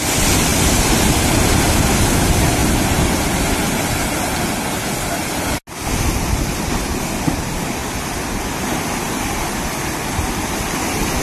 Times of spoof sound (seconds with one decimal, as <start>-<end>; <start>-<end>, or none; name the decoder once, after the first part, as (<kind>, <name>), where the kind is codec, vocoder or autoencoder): none